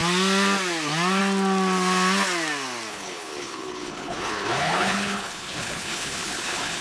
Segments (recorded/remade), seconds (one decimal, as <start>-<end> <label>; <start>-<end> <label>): 0.0-2.9 recorded; 2.9-6.8 remade